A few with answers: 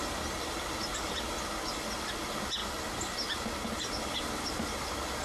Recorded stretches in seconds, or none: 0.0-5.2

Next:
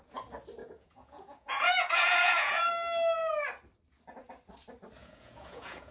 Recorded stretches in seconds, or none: 0.0-0.6; 2.7-5.0

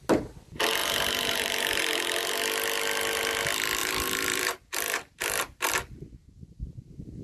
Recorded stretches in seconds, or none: 0.0-0.8; 1.8-3.8; 5.7-7.2

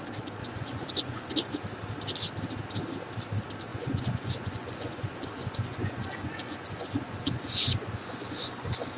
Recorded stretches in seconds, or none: 0.0-0.4; 1.5-3.7

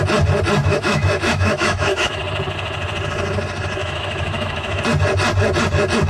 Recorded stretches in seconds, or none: 0.0-0.6; 2.2-3.8; 4.8-6.1

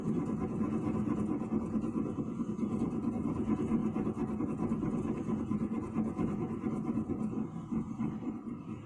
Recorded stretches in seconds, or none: 3.8-4.4